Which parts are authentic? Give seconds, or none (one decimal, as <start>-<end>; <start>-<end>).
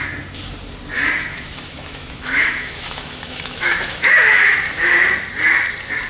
0.0-1.3; 5.0-6.1